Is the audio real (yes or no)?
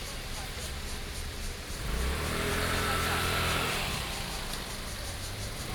no